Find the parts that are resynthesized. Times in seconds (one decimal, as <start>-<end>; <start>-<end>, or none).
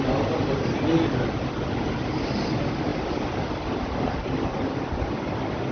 none